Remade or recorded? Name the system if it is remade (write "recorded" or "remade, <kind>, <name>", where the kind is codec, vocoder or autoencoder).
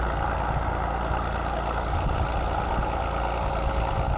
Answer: recorded